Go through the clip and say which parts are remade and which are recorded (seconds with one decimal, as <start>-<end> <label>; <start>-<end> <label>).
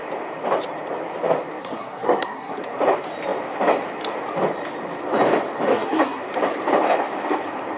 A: 0.0-1.6 recorded; 1.6-2.6 remade; 2.6-5.7 recorded; 5.7-6.2 remade; 6.2-7.8 recorded